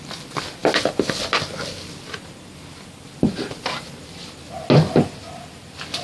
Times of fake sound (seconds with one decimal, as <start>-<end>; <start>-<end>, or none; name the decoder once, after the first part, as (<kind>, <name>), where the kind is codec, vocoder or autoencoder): none